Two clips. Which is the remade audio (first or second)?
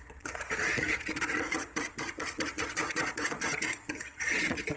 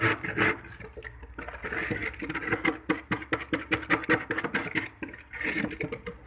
first